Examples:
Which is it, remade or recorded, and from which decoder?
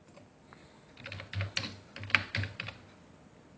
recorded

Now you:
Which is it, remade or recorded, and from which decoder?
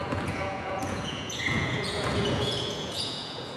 remade, vocoder, Vocos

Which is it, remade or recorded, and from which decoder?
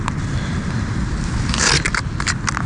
recorded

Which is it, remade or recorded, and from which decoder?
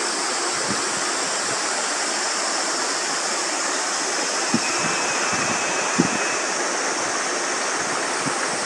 recorded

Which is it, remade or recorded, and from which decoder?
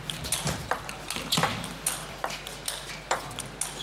recorded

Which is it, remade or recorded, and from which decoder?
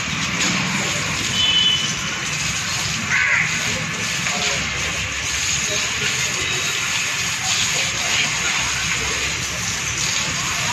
recorded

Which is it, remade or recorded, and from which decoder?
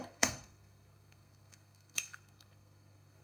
remade, codec, SNAC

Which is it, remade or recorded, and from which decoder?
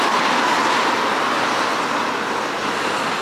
recorded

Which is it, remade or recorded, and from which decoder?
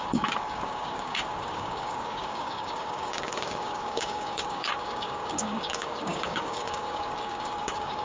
remade, codec, DAC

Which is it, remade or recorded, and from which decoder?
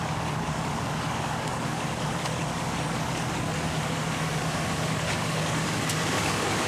remade, codec, DAC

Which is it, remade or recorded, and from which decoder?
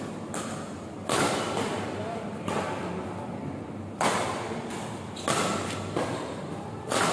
recorded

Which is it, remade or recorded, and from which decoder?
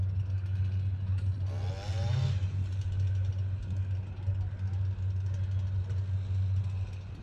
recorded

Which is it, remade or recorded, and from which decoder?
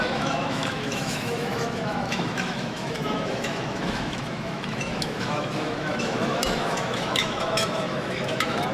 remade, autoencoder, DAC-VAE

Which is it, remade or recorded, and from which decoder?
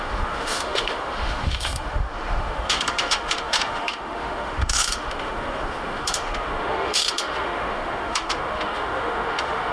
remade, autoencoder, DAC-VAE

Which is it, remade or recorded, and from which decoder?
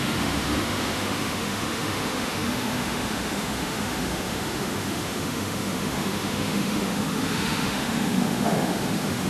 remade, autoencoder, DAC-VAE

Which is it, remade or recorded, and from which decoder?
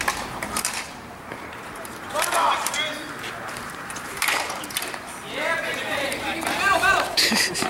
remade, vocoder, BigVGAN v2